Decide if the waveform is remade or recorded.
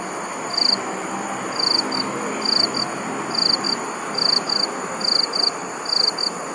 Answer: recorded